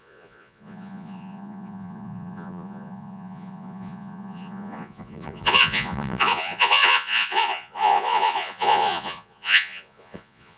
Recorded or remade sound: remade